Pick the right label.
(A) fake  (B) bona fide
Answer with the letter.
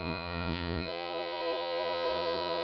A